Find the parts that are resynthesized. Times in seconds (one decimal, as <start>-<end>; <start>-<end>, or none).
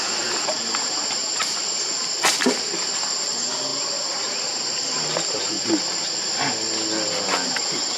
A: none